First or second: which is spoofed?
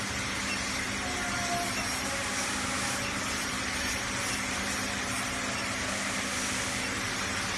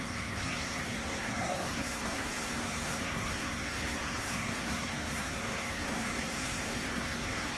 second